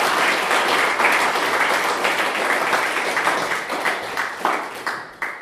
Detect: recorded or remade recorded